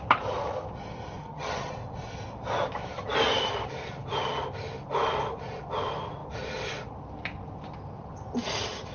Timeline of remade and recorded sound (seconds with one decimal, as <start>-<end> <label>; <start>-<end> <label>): 0.0-1.2 recorded; 1.2-1.7 remade; 1.7-8.9 recorded